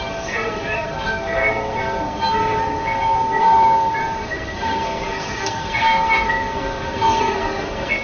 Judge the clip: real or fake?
fake